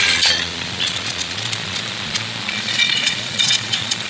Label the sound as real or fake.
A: fake